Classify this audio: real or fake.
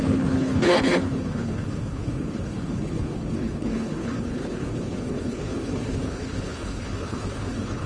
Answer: fake